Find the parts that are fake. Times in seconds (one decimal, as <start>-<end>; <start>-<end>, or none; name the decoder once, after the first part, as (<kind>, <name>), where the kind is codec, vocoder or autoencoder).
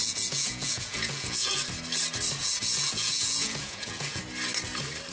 0.0-1.6 (vocoder, Vocos); 2.4-4.2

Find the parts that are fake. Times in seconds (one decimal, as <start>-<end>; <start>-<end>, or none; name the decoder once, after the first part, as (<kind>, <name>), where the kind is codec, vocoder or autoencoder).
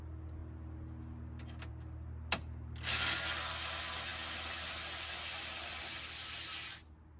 none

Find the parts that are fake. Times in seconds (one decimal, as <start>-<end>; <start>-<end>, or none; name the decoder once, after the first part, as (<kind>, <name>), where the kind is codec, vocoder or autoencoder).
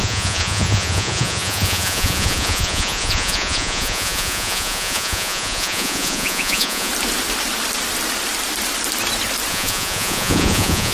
0.0-6.9 (vocoder, Vocos); 9.5-10.9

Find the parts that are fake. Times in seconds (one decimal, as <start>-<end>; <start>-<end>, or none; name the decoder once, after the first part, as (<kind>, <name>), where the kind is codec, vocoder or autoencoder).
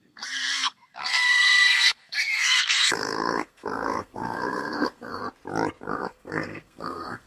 0.0-5.2 (codec, SNAC); 5.8-7.3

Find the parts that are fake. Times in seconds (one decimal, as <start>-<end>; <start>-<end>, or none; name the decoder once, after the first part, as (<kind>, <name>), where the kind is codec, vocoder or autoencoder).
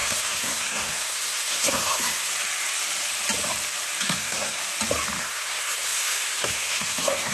0.0-2.3 (codec, SNAC); 4.0-4.6; 5.2-7.3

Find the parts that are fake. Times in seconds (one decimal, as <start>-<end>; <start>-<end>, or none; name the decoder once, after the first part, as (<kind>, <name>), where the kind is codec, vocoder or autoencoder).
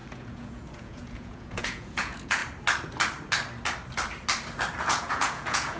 0.0-2.4 (vocoder, Vocos); 4.8-5.8